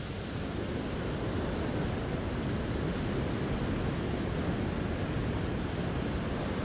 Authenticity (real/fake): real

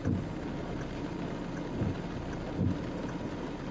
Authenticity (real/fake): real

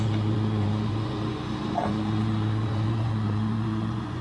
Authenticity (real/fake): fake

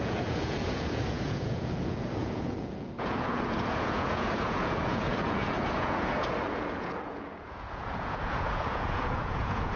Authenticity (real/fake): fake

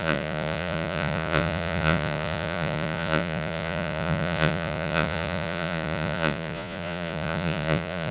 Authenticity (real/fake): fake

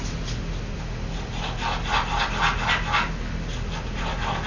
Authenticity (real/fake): real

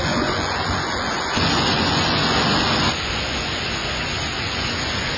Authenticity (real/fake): fake